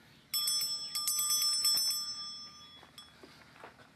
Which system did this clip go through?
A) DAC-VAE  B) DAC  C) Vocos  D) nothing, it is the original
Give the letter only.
D